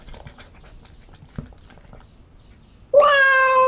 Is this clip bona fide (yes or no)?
yes